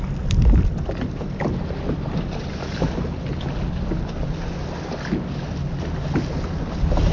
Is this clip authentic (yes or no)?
yes